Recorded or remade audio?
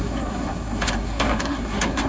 remade